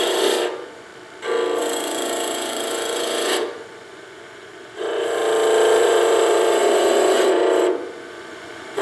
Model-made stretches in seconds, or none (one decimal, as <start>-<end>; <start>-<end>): 0.0-0.9; 1.6-5.2; 5.8-8.8